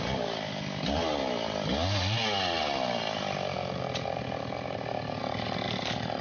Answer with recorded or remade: recorded